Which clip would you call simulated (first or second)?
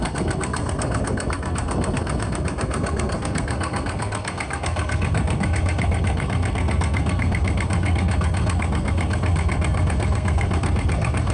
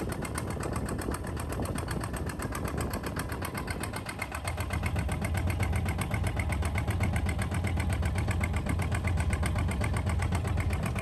first